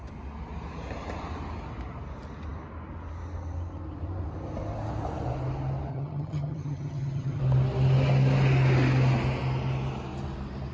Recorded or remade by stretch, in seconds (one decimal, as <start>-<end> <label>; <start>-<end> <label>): 0.0-5.9 recorded; 5.9-7.4 remade; 7.4-10.7 recorded

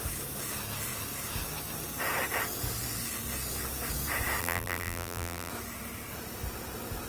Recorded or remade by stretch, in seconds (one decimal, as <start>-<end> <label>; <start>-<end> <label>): 0.0-4.4 recorded; 4.4-5.5 remade; 5.5-7.1 recorded

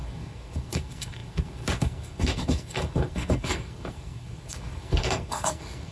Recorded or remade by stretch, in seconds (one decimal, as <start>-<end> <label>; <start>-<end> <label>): 0.0-5.9 remade

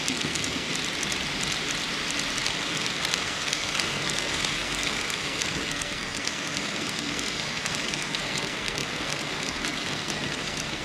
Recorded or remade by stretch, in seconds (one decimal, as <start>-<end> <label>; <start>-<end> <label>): 0.0-0.7 remade; 0.7-2.4 recorded; 2.4-10.8 remade

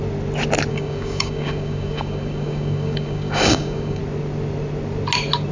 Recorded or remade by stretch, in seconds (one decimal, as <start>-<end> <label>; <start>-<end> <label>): 0.0-0.7 recorded; 0.7-4.0 remade; 4.0-5.5 recorded

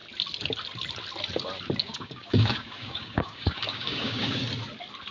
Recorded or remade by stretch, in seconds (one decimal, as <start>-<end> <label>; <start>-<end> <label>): 0.0-1.8 recorded; 1.8-4.4 remade; 4.4-5.1 recorded

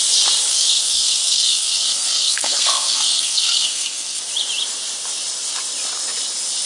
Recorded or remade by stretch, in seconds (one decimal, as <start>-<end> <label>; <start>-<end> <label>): 0.0-0.5 recorded; 0.5-4.2 remade; 4.2-6.7 recorded